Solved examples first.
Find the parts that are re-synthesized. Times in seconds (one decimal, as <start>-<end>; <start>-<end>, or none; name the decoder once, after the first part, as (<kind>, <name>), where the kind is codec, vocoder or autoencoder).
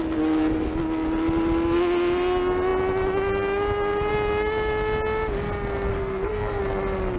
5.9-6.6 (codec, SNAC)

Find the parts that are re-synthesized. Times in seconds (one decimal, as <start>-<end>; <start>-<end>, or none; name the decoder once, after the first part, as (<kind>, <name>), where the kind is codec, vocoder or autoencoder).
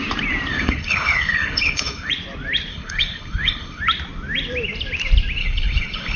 0.5-2.1 (codec, HILCodec); 2.7-3.8; 5.4-6.2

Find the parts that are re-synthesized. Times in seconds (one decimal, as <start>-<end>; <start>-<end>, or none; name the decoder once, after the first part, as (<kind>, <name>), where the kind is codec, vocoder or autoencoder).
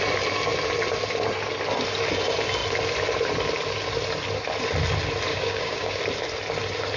5.3-6.0 (codec, DAC)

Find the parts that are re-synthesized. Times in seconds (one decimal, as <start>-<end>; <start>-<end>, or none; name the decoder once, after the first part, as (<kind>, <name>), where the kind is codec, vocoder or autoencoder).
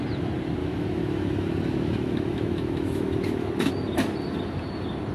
0.6-3.7 (autoencoder, DAC-VAE)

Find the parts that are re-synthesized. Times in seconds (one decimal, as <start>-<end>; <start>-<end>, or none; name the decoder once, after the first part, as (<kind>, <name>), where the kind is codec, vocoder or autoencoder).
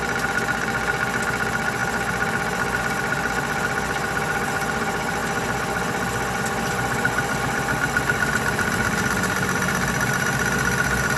none